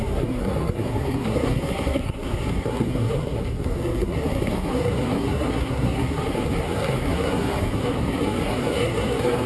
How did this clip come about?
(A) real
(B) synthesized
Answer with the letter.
B